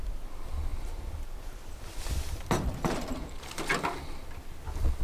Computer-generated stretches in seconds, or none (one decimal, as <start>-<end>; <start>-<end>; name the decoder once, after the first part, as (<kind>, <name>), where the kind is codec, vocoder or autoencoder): 0.7-3.4 (vocoder, BigVGAN v2)